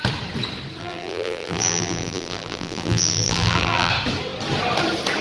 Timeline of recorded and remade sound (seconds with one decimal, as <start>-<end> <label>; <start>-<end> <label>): 0.0-0.8 recorded; 0.8-3.9 remade; 3.9-5.2 recorded